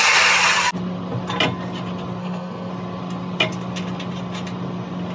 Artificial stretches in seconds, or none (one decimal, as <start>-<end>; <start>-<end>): 2.2-2.7